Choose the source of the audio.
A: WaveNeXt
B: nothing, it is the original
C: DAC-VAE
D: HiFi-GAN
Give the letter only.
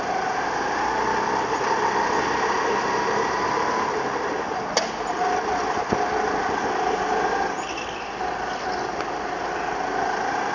B